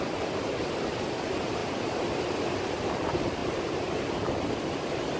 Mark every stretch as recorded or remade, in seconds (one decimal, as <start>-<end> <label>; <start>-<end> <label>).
0.0-5.2 recorded